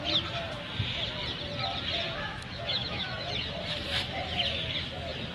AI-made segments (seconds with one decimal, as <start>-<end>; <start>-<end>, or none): 2.3-3.3